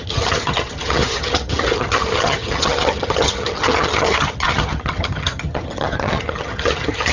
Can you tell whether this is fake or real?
fake